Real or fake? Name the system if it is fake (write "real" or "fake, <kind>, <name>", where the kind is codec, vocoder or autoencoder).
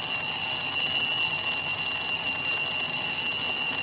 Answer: real